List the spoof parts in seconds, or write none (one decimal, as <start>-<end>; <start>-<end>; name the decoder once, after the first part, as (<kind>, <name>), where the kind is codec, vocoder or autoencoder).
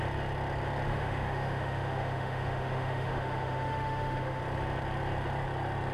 0.9-4.4 (autoencoder, DAC-VAE)